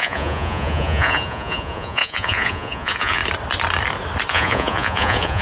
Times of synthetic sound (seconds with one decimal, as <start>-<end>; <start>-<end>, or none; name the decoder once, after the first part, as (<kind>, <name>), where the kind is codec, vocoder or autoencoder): 0.0-3.2 (vocoder, Vocos); 4.3-5.4